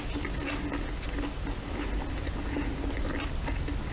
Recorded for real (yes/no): yes